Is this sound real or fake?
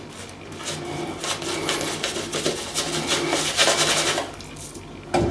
real